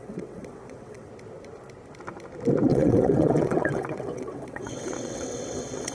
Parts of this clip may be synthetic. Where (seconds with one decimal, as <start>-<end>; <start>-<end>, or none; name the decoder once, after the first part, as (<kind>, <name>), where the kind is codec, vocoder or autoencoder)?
0.0-1.1 (vocoder, WaveNeXt); 2.7-5.9